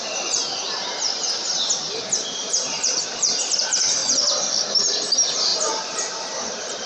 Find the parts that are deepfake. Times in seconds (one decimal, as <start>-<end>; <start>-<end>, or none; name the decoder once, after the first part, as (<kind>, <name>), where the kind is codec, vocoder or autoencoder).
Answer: 0.0-0.4 (vocoder, BigVGAN v2); 2.2-4.0; 4.7-6.9